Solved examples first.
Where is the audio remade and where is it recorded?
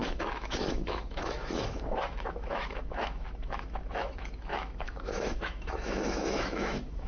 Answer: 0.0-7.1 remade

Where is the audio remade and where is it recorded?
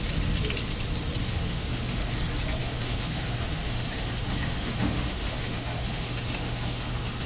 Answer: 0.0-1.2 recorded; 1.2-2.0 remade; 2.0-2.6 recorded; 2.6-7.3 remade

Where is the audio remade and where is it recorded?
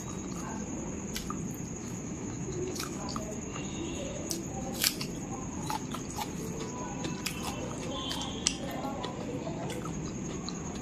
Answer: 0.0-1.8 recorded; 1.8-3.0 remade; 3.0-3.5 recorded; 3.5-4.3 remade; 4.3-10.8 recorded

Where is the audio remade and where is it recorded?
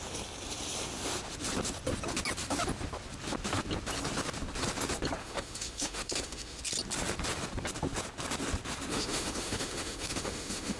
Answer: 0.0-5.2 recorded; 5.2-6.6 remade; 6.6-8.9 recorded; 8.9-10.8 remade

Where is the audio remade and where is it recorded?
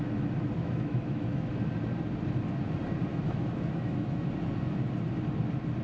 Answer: 0.0-0.6 recorded; 0.6-1.5 remade; 1.5-3.1 recorded; 3.1-4.3 remade; 4.3-5.8 recorded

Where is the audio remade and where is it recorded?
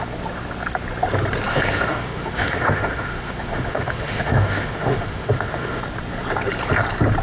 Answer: 0.0-1.5 recorded; 1.5-5.8 remade; 5.8-7.2 recorded